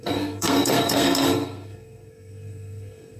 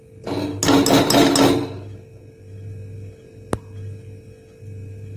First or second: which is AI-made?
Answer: first